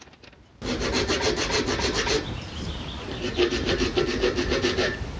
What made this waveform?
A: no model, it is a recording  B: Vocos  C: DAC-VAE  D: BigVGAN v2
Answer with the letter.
A